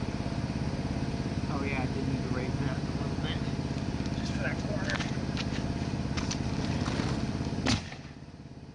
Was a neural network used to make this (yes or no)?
no